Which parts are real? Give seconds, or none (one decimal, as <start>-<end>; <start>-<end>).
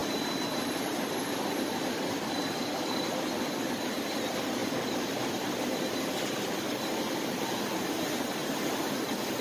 0.0-0.5